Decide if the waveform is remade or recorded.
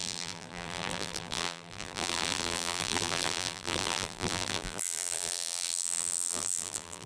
remade